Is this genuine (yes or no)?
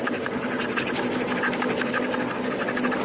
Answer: yes